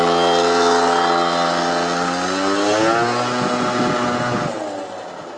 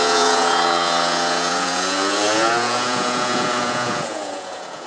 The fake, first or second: second